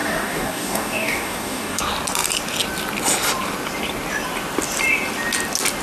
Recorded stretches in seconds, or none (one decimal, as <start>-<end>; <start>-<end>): 1.8-5.8